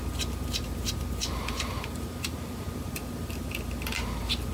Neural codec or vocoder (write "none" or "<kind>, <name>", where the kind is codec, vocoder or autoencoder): vocoder, BigVGAN v2